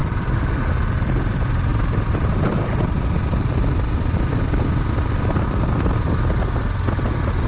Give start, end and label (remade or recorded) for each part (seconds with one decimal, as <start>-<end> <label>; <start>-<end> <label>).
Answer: 0.0-0.6 remade; 0.6-1.7 recorded; 1.7-4.7 remade; 4.7-7.5 recorded

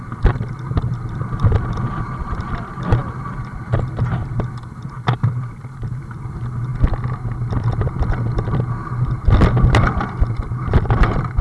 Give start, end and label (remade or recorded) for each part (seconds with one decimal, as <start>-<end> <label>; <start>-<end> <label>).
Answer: 0.0-6.7 remade; 6.7-11.4 recorded

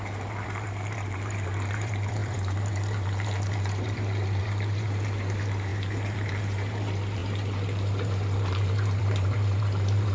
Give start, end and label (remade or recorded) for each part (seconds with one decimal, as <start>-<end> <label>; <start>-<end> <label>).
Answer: 0.0-10.1 remade

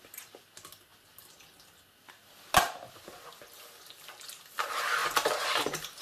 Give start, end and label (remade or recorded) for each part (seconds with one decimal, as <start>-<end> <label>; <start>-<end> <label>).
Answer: 0.0-5.0 recorded; 5.0-6.0 remade

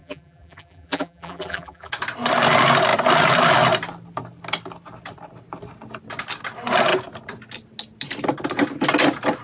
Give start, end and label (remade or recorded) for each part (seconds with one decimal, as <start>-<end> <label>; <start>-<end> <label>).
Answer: 0.0-1.9 remade; 1.9-9.4 recorded

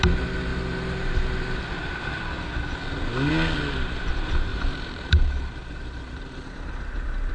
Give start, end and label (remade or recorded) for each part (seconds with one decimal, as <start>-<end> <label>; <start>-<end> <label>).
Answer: 0.0-4.5 recorded; 4.5-7.3 remade

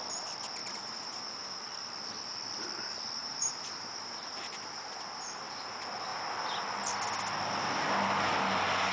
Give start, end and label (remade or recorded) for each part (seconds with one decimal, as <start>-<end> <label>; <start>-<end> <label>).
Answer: 0.0-0.6 recorded; 0.6-1.3 remade; 1.3-3.2 recorded; 3.2-5.1 remade; 5.1-8.9 recorded

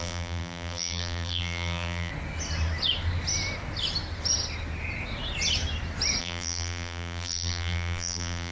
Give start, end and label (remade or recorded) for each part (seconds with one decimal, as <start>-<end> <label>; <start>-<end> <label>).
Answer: 0.0-2.1 remade; 2.1-6.2 recorded; 6.2-8.5 remade